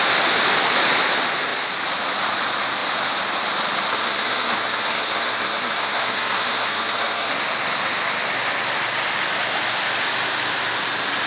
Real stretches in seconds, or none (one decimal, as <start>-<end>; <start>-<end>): 0.0-3.9; 7.3-11.3